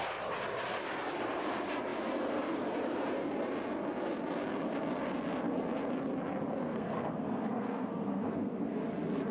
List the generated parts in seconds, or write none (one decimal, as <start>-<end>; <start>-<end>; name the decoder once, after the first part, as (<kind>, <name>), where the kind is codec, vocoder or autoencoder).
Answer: 6.6-8.9 (codec, SNAC)